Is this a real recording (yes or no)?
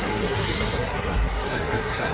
no